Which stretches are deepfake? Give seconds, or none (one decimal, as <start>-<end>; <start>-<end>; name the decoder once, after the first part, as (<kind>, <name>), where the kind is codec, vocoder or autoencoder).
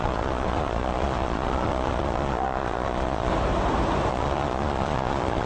0.0-3.3 (vocoder, Vocos); 4.1-5.5